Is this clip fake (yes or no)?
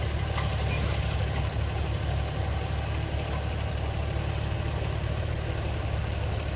no